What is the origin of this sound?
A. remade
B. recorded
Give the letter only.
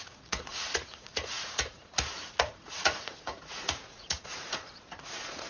A